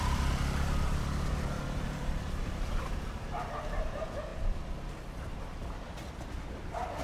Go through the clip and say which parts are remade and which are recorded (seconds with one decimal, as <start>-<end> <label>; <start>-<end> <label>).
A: 0.0-7.0 remade